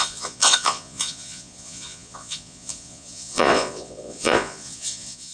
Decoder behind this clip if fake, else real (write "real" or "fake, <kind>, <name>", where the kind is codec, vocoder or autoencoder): fake, vocoder, Vocos